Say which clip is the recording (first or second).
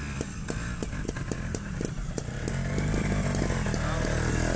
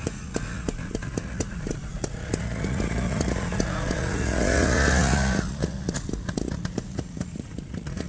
first